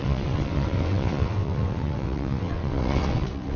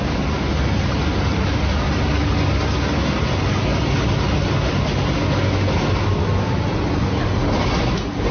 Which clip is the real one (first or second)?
second